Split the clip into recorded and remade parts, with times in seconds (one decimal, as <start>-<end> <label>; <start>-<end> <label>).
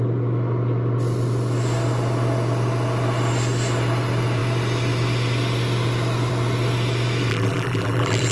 0.0-7.3 recorded; 7.3-8.3 remade